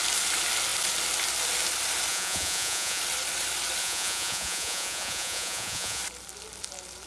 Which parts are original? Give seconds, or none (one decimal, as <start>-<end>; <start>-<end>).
0.0-2.1; 3.0-3.8; 6.0-7.1